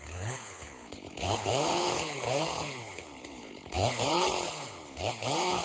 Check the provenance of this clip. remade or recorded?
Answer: remade